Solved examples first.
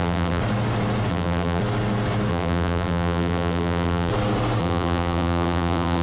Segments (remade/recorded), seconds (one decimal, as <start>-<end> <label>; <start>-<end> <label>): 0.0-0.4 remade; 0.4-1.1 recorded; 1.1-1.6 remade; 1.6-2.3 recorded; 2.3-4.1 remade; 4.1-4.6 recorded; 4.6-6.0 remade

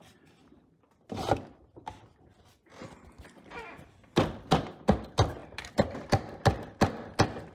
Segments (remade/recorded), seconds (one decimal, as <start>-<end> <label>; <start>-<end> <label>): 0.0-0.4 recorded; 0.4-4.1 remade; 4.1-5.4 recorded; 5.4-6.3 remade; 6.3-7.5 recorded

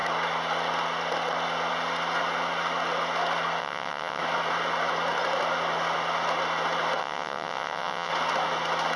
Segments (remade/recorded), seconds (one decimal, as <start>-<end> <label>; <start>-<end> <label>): 0.0-3.6 recorded; 3.6-4.2 remade; 4.2-7.0 recorded; 7.0-8.1 remade; 8.1-9.0 recorded

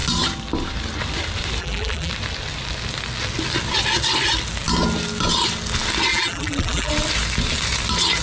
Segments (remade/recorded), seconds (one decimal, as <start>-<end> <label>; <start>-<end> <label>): 0.0-1.6 recorded; 1.6-2.1 remade; 2.1-6.1 recorded; 6.1-6.9 remade; 6.9-8.2 recorded